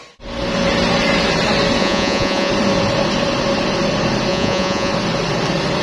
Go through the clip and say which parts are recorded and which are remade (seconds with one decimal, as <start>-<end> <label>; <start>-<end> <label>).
0.0-1.8 recorded; 1.8-2.5 remade; 2.5-4.3 recorded; 4.3-4.9 remade; 4.9-5.8 recorded